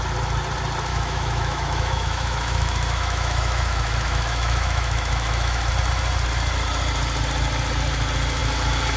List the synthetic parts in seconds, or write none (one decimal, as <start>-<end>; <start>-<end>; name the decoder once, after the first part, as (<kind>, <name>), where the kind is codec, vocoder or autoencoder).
0.9-5.7 (autoencoder, DAC-VAE)